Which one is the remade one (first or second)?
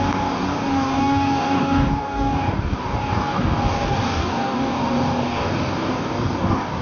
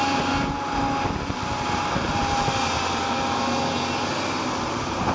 first